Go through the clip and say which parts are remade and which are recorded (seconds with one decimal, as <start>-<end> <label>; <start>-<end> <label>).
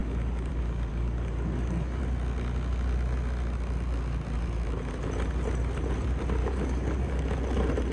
0.0-0.5 remade; 0.5-0.9 recorded; 0.9-2.0 remade; 2.0-6.4 recorded; 6.4-7.4 remade; 7.4-7.9 recorded